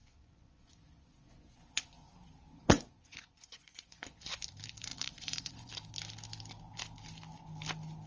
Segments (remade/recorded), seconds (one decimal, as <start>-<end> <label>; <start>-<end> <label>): 0.0-2.1 remade; 2.1-2.5 recorded; 2.5-4.2 remade; 4.2-4.9 recorded; 4.9-5.7 remade; 5.7-8.1 recorded